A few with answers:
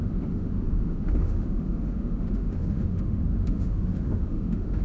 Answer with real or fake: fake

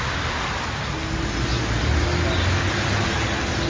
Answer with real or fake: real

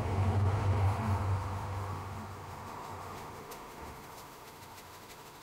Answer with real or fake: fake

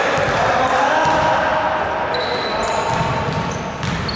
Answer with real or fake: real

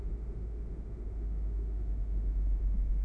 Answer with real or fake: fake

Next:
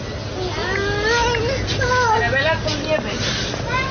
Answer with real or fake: real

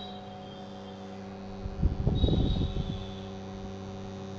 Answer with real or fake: real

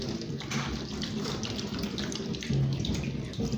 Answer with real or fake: real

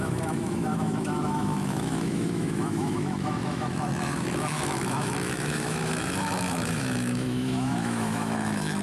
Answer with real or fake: fake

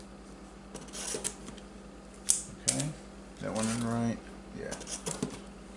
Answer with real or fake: real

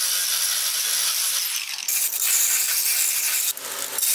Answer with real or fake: real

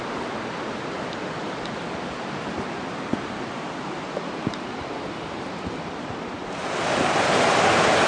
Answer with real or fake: real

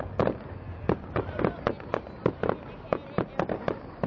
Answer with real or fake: real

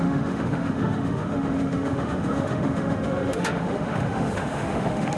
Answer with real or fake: fake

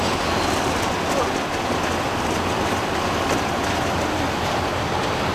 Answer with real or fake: real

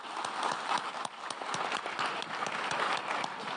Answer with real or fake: real